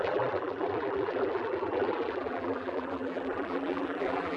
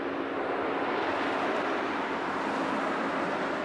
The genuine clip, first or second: second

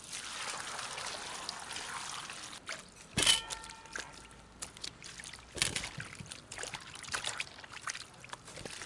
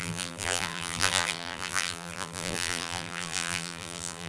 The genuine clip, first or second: first